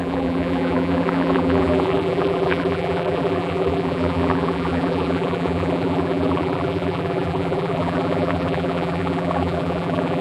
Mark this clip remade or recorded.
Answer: remade